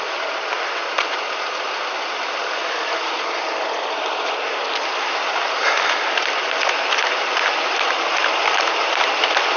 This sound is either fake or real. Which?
real